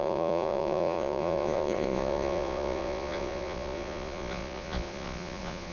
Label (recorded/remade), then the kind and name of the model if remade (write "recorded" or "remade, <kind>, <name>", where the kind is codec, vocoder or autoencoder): remade, vocoder, Vocos